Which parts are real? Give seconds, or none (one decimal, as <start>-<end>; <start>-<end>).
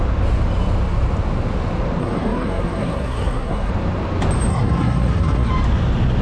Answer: 0.0-2.0; 3.7-4.5; 5.5-6.2